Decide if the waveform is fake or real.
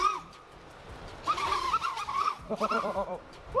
fake